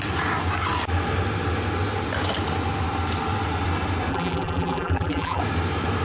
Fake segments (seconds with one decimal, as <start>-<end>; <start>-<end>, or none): 4.1-5.4

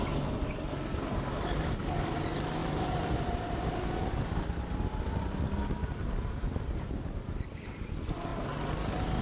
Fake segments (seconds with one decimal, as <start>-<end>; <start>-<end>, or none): 2.6-3.7